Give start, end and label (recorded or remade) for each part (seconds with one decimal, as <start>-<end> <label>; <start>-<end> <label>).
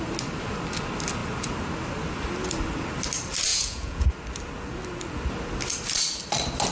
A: 0.0-3.5 recorded; 3.5-4.1 remade; 4.1-6.7 recorded